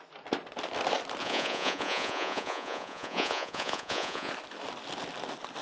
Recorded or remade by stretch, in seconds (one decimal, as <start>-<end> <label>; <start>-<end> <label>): 0.0-1.2 recorded; 1.2-4.3 remade; 4.3-5.6 recorded